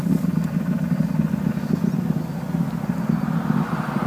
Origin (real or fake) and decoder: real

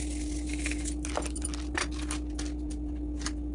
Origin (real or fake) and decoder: real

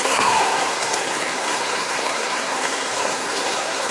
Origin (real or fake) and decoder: fake, codec, SNAC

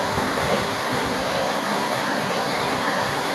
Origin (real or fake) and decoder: fake, codec, SNAC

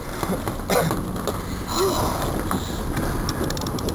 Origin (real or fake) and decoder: real